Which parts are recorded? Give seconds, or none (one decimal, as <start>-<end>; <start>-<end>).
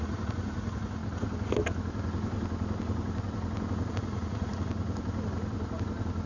1.0-3.9; 4.7-6.3